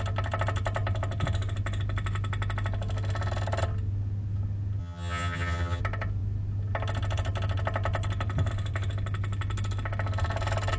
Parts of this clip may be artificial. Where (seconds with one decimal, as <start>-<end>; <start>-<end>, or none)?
4.8-5.8